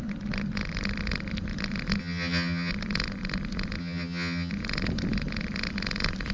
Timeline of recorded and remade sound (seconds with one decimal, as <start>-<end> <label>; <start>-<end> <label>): 0.0-2.0 recorded; 2.0-2.7 remade; 2.7-3.8 recorded; 3.8-4.5 remade; 4.5-6.3 recorded